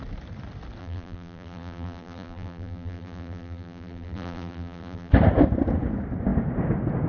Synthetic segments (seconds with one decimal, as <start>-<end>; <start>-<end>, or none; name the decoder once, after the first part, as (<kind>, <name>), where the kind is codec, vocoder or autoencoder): 0.8-5.1 (vocoder, BigVGAN v2)